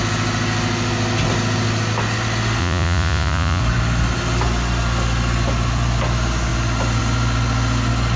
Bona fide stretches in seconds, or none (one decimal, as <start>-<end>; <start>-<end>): 0.0-2.6; 3.6-8.2

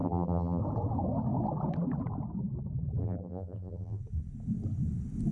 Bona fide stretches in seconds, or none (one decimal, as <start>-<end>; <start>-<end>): 0.6-3.0; 4.0-5.3

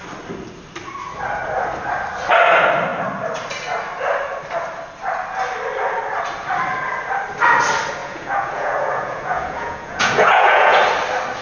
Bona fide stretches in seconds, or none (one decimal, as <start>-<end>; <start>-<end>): 0.0-8.0; 10.8-11.4

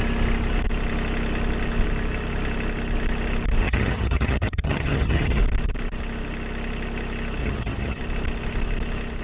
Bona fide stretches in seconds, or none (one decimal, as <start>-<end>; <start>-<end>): 0.0-3.6; 5.4-7.4; 8.0-9.2

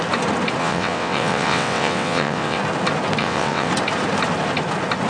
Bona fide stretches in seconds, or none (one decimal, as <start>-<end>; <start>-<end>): 0.0-0.6; 2.6-3.2; 3.7-5.1

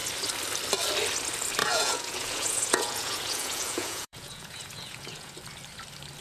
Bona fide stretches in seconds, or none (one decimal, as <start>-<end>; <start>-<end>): 0.0-1.6; 5.3-6.2

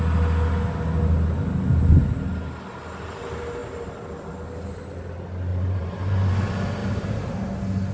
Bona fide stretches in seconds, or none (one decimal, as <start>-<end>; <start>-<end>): 0.0-5.5; 6.3-6.8; 7.3-7.9